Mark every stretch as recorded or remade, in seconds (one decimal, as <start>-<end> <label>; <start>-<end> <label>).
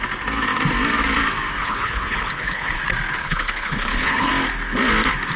0.0-1.6 recorded; 1.6-2.8 remade; 2.8-3.2 recorded; 3.2-4.3 remade; 4.3-5.4 recorded